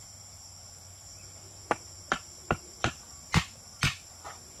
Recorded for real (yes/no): yes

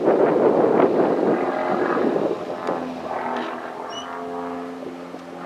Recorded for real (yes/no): yes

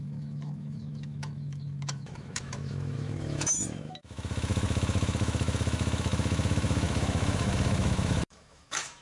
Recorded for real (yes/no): no